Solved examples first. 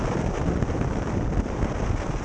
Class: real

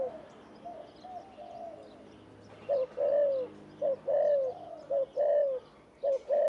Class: real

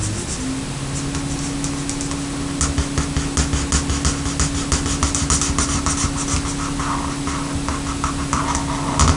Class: real